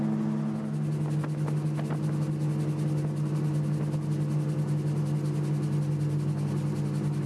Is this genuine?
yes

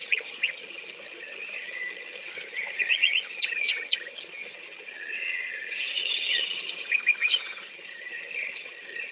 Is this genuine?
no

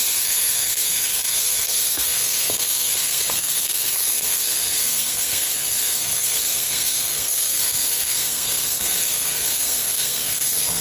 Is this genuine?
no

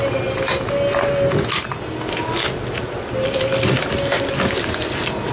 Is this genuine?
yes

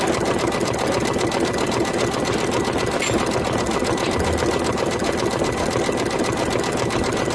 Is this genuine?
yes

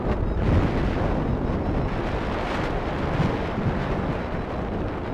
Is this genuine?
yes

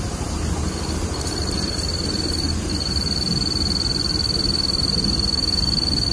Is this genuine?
no